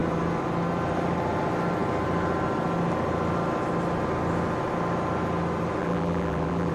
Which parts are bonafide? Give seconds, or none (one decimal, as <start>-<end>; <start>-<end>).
0.0-5.8